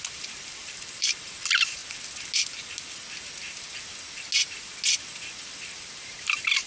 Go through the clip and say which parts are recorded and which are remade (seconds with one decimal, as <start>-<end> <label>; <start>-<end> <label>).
0.0-1.8 remade; 1.8-5.8 recorded; 5.8-6.7 remade